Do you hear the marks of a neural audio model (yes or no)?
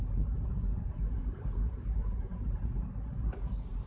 yes